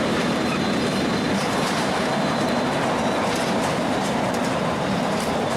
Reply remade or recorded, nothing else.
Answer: remade